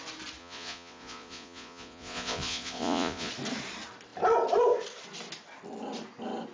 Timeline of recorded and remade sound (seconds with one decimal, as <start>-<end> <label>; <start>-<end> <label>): 0.0-0.4 recorded; 0.4-3.3 remade; 3.3-6.5 recorded